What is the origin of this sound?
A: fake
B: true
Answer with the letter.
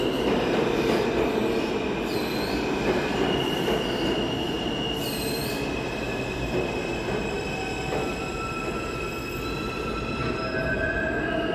B